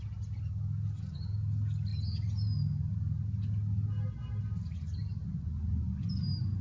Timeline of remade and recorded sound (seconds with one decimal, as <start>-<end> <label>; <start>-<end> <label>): 0.0-6.6 recorded